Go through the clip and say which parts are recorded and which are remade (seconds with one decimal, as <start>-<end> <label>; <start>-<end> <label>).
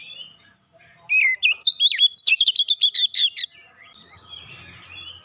0.0-5.2 recorded